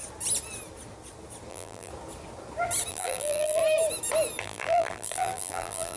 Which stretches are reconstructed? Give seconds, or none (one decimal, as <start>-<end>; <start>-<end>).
1.5-1.9; 2.9-3.6; 4.4-6.0